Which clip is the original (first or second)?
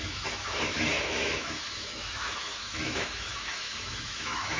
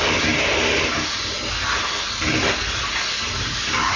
second